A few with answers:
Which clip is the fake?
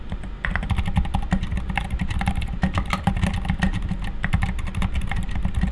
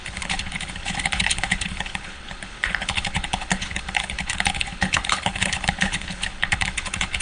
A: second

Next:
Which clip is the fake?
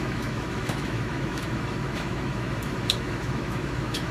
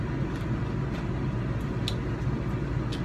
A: first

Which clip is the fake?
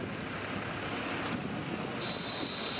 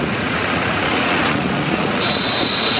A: second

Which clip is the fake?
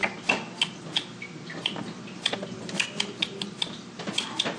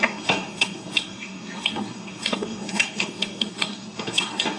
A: second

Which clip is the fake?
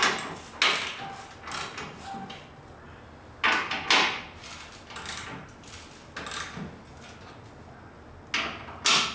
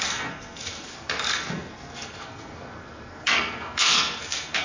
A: second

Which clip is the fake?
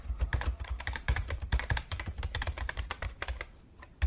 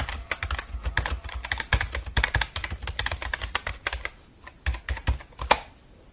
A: first